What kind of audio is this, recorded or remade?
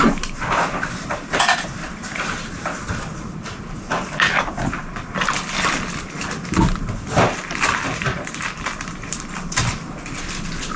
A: recorded